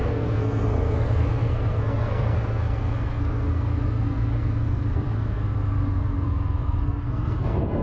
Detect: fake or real fake